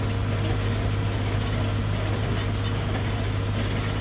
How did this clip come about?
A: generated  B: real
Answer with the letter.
B